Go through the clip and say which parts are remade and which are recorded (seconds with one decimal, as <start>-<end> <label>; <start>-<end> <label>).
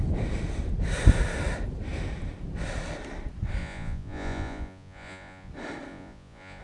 0.0-3.6 recorded; 3.6-5.5 remade; 5.5-5.9 recorded; 5.9-6.6 remade